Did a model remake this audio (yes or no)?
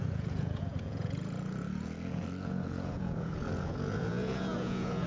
yes